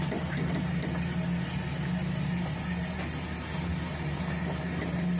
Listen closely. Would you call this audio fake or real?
real